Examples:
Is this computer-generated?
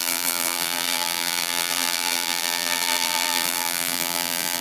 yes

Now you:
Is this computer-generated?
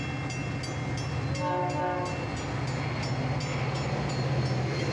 no